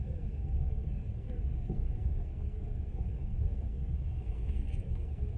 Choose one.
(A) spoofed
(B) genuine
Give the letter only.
A